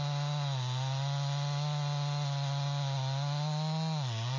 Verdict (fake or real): real